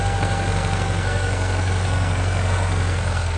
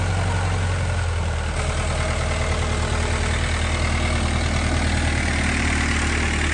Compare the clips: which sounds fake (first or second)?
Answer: first